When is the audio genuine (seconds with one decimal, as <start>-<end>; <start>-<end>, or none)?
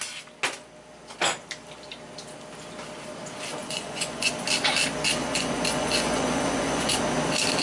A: 0.0-3.6; 4.3-5.2; 7.0-7.6